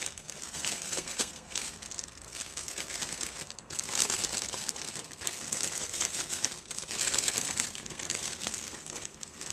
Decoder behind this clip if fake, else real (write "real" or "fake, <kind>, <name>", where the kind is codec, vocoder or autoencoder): fake, codec, SNAC